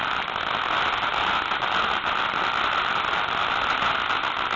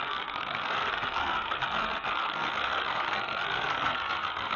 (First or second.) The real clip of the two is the first